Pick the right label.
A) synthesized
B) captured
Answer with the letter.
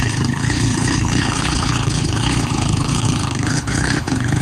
A